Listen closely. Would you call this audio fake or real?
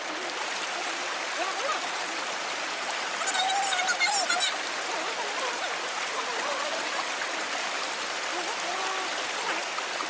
real